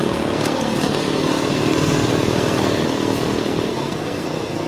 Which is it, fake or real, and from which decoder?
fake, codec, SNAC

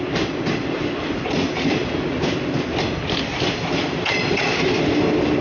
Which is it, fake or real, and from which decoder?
real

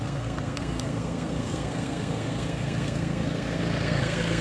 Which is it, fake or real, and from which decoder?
fake, codec, SNAC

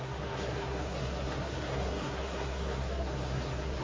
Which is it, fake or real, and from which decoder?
fake, codec, SNAC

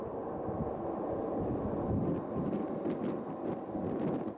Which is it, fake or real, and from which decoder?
real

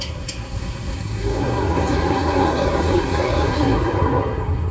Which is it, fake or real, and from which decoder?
fake, codec, SNAC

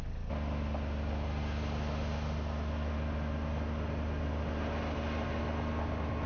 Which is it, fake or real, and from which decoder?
real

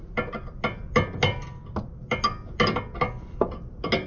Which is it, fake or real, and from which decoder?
real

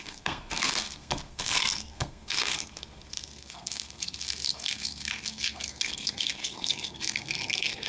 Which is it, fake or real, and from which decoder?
fake, codec, SNAC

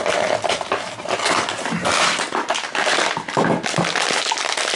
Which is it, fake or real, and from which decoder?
real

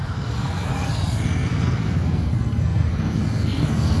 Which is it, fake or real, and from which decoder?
fake, codec, SNAC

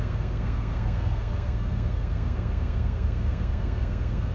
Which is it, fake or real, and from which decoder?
fake, codec, SNAC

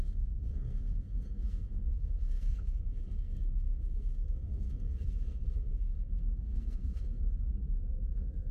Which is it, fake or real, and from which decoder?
fake, codec, SNAC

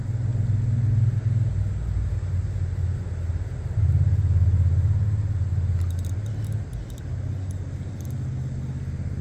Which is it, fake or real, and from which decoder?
real